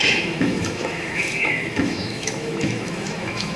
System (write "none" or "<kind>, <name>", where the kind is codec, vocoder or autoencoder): autoencoder, DAC-VAE